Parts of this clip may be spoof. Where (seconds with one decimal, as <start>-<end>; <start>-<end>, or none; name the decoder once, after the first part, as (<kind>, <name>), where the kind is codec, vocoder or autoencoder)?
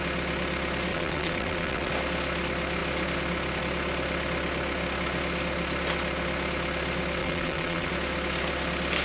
0.9-1.9 (vocoder, WaveNeXt); 7.2-7.9